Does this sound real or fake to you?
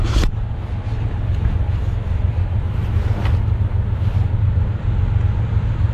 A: real